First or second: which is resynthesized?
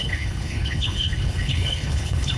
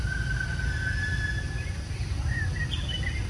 first